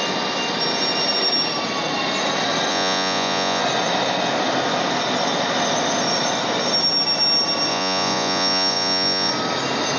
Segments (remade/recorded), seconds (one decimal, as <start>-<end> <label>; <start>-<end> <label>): 0.0-2.7 recorded; 2.7-3.6 remade; 3.6-7.7 recorded; 7.7-9.3 remade; 9.3-10.0 recorded